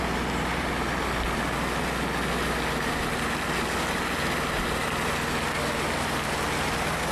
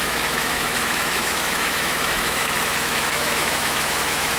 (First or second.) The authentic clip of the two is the first